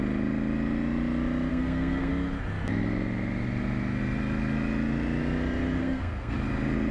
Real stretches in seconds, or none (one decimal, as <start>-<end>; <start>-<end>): 0.0-1.5; 2.1-5.8; 6.3-6.9